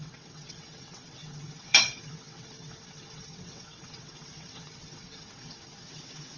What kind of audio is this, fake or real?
fake